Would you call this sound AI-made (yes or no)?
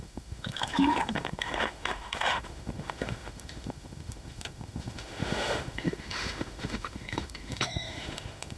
yes